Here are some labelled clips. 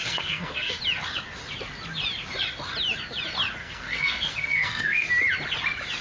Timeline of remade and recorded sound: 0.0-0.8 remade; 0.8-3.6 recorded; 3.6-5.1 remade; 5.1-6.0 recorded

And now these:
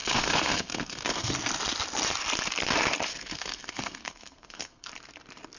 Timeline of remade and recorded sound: 0.0-1.3 remade; 1.3-3.1 recorded; 3.1-4.9 remade; 4.9-5.6 recorded

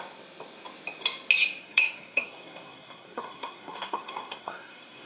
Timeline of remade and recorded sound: 0.0-1.6 recorded; 1.6-5.1 remade

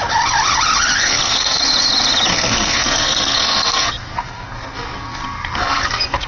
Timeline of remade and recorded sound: 0.0-1.0 recorded; 1.0-1.6 remade; 1.6-2.3 recorded; 2.3-6.3 remade